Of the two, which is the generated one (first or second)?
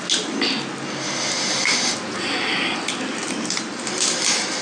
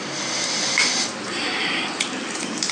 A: second